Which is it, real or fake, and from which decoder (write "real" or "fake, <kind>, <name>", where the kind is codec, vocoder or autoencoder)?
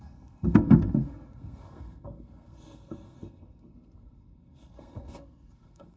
fake, codec, SNAC